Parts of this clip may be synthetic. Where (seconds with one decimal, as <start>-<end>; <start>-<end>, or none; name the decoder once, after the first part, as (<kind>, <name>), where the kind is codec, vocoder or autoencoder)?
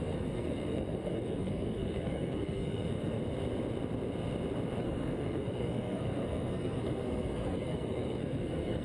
0.0-3.2 (codec, SNAC); 4.8-8.8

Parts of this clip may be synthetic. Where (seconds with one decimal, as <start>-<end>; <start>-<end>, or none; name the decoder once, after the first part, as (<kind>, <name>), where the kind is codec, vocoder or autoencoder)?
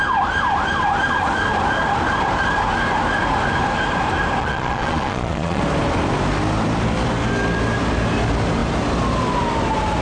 4.4-5.6 (vocoder, Vocos)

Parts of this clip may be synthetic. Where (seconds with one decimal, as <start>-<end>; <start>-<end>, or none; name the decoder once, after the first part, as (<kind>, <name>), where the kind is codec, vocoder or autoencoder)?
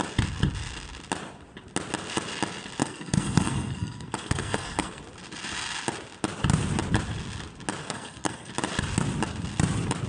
2.8-5.0 (codec, SNAC); 7.8-8.5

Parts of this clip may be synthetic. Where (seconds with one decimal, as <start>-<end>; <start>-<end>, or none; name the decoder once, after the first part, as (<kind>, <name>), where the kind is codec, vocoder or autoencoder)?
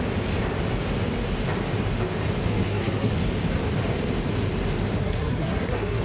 2.5-3.1 (codec, SNAC); 5.0-6.0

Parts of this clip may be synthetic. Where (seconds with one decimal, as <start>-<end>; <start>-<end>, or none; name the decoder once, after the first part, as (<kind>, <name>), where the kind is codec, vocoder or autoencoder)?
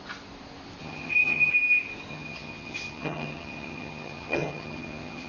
0.8-1.5 (vocoder, HiFi-GAN); 2.1-5.3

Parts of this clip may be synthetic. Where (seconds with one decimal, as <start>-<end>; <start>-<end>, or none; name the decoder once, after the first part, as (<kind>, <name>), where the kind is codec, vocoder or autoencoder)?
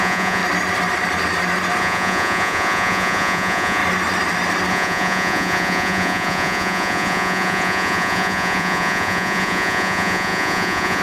0.0-0.4 (vocoder, Vocos); 1.8-3.8; 4.7-11.0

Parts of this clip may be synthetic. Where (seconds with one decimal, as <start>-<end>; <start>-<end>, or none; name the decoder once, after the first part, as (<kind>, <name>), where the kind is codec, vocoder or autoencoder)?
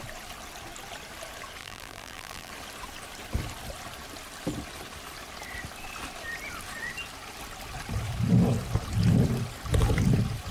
1.6-2.5 (vocoder, BigVGAN v2)